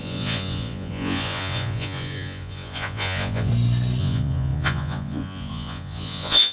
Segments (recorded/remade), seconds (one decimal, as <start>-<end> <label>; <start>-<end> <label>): 0.0-3.5 remade; 3.5-4.0 recorded; 4.0-6.5 remade